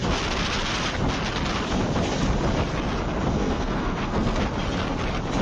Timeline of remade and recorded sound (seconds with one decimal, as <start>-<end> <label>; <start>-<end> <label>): 0.0-3.3 recorded; 3.3-4.4 remade; 4.4-5.4 recorded